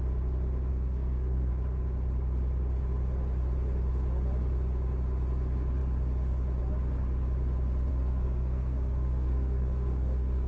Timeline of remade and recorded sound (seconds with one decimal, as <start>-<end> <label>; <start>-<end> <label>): 0.0-0.7 recorded; 0.7-1.5 remade; 1.5-7.9 recorded; 7.9-10.5 remade

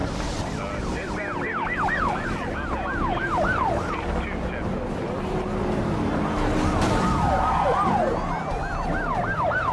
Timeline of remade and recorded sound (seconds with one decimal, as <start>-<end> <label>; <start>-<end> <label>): 0.0-9.7 recorded

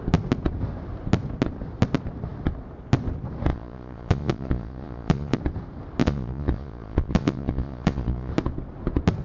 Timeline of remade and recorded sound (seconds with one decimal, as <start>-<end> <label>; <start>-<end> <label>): 0.0-3.5 recorded; 3.5-5.4 remade; 5.4-6.0 recorded; 6.0-8.3 remade; 8.3-9.2 recorded

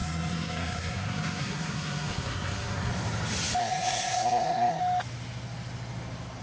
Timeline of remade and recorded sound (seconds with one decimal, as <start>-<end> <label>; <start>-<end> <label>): 0.0-2.9 remade; 2.9-3.6 recorded; 3.6-4.8 remade; 4.8-6.4 recorded